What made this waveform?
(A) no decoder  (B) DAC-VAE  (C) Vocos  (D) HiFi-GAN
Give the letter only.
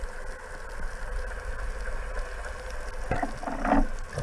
A